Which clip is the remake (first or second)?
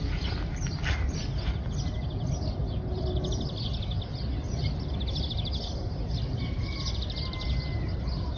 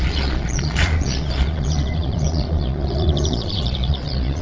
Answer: second